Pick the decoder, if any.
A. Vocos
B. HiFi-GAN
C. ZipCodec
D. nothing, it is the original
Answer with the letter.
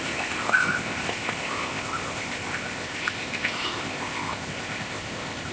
C